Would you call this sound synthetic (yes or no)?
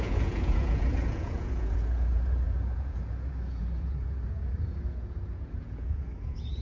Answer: yes